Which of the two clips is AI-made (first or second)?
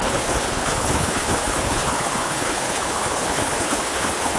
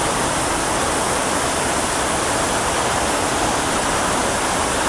first